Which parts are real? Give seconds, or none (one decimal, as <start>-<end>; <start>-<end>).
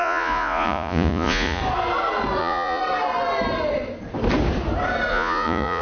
1.6-2.4; 2.8-5.1